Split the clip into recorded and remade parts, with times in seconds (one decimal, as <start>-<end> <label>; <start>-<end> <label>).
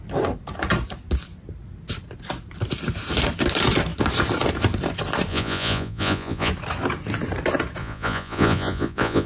0.0-5.3 recorded; 5.3-6.5 remade; 6.5-7.8 recorded; 7.8-9.3 remade